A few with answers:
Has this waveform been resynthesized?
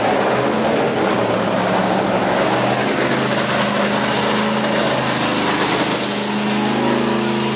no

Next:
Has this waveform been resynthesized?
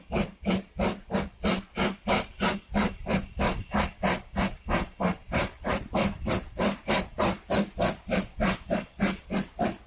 no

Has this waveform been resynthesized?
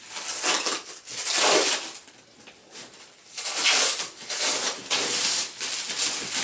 no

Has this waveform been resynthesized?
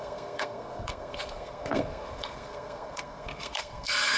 yes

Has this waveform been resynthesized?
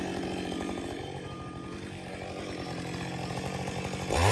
no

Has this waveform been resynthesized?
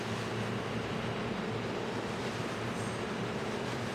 no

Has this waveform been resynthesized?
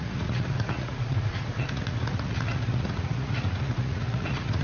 yes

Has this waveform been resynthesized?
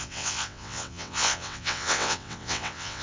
yes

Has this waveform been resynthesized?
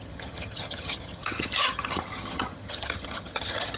yes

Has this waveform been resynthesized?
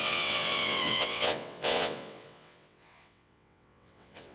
yes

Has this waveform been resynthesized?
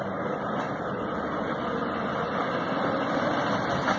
no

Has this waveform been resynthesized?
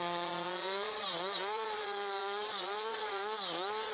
yes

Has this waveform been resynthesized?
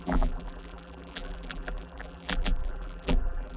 yes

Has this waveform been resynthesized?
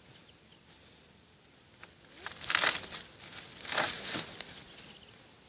no